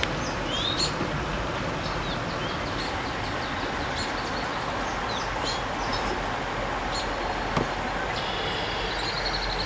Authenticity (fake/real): real